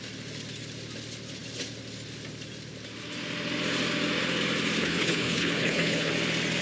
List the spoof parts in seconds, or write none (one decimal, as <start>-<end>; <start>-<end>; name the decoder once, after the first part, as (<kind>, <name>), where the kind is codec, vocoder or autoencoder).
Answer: 4.8-6.1 (codec, HILCodec)